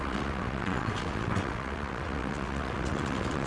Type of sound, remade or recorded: remade